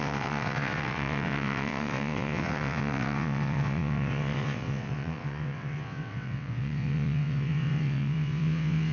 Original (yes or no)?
no